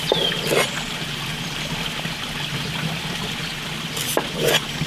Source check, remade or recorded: recorded